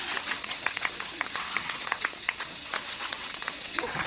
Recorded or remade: remade